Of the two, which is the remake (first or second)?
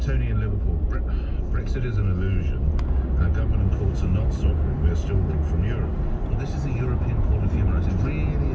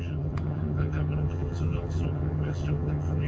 second